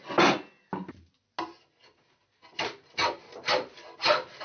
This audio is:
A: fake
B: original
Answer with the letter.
B